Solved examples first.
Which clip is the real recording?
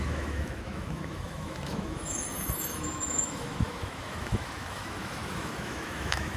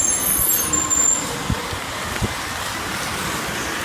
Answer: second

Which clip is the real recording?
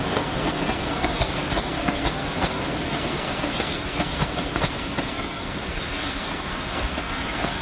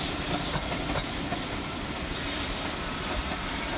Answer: second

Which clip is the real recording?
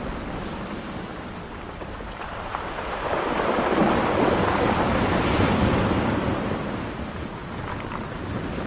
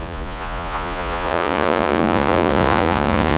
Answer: first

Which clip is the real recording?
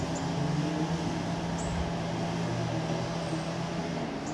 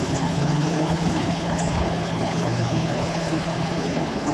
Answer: first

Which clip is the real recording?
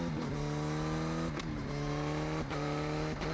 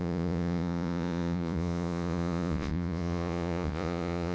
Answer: first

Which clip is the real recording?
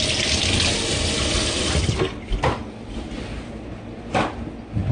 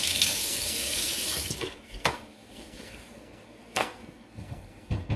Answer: first